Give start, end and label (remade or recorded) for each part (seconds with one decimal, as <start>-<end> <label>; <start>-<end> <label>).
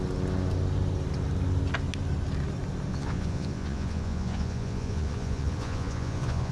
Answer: 0.0-2.9 recorded; 2.9-6.5 remade